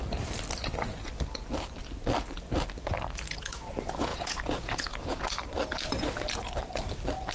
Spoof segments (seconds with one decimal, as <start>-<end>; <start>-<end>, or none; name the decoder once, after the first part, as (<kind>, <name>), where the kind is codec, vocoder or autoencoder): 4.1-5.2 (vocoder, Vocos)

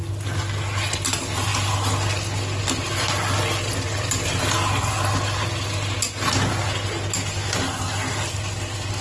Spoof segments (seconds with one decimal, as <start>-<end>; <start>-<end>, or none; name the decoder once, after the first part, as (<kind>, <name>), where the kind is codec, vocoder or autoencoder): none